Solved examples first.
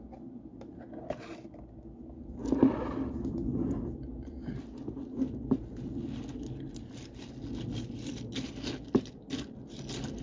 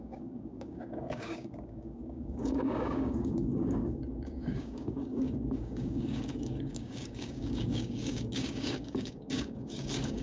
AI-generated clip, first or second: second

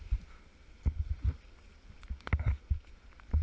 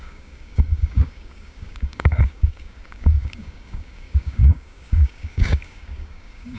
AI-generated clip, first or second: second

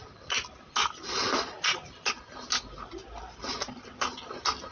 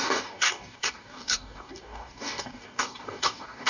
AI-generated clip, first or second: second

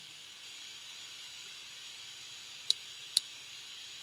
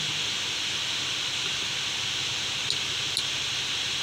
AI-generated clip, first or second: first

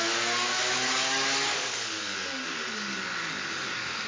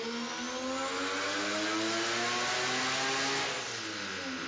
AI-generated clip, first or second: first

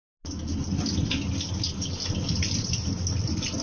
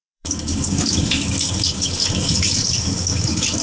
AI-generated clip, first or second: second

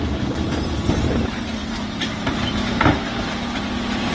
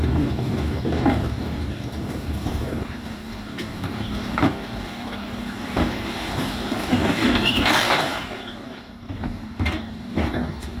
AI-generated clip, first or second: second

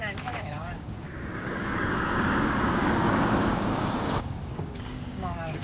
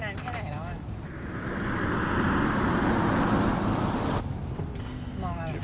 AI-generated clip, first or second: first